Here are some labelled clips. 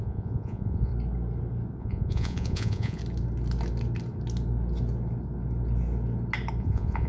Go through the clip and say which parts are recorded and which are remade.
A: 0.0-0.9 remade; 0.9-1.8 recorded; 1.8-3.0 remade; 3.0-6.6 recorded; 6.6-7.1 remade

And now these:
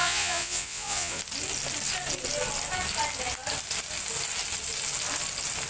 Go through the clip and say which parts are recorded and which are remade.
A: 0.0-1.2 remade; 1.2-5.7 recorded

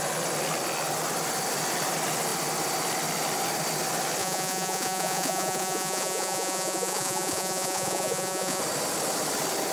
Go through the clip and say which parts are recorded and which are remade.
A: 0.0-4.2 recorded; 4.2-8.6 remade; 8.6-9.7 recorded

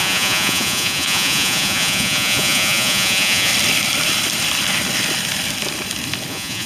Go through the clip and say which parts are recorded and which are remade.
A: 0.0-3.5 remade; 3.5-6.3 recorded; 6.3-6.7 remade

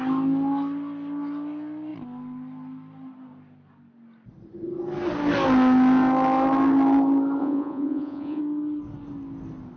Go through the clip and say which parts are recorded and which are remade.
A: 0.0-7.4 recorded; 7.4-8.4 remade; 8.4-9.8 recorded

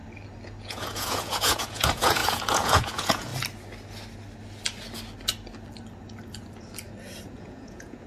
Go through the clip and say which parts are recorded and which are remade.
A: 0.0-0.6 recorded; 0.6-3.3 remade; 3.3-7.3 recorded; 7.3-8.1 remade